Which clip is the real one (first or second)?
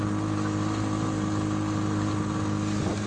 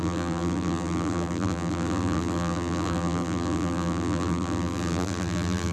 first